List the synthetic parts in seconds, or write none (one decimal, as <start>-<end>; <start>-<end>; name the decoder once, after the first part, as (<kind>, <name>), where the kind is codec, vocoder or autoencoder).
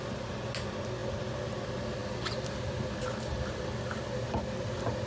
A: none